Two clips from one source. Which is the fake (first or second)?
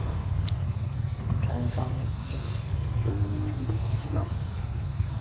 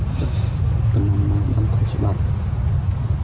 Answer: first